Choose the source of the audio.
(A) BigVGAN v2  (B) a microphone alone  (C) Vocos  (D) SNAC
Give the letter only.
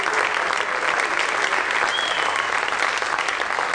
B